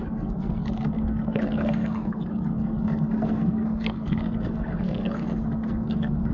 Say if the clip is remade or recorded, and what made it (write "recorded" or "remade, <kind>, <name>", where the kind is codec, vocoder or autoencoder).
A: remade, codec, SNAC